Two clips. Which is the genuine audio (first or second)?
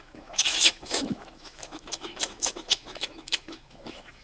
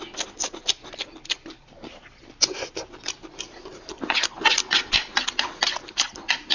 second